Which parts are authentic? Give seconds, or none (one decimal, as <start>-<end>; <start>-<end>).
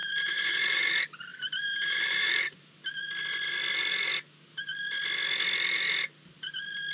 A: 0.9-1.3; 2.7-6.9